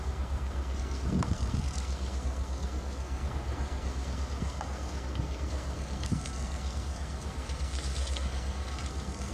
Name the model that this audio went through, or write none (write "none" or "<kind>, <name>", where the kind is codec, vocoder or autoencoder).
codec, SNAC